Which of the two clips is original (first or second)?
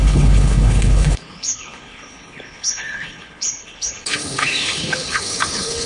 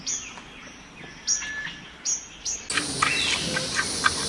second